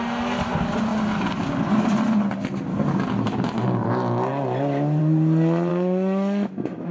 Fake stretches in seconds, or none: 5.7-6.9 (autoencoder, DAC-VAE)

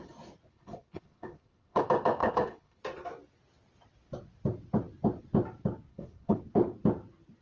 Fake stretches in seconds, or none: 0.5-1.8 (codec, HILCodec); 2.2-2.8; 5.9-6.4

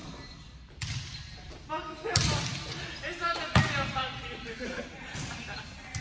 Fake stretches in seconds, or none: none